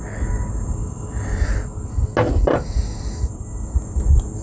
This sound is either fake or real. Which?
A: real